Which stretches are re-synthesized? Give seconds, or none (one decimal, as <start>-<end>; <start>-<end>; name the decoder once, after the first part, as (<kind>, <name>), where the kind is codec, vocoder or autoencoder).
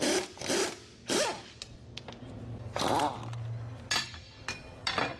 none